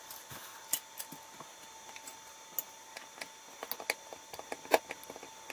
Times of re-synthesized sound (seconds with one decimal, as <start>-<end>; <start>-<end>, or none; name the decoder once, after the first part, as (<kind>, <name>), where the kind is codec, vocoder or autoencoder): none